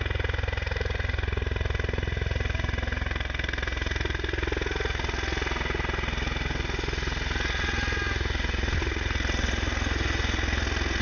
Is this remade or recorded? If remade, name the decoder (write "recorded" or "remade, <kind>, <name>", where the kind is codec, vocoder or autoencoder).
recorded